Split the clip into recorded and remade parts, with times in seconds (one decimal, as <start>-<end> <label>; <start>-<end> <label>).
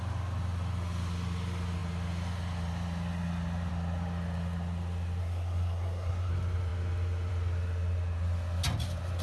0.0-5.2 recorded; 5.2-6.3 remade; 6.3-9.2 recorded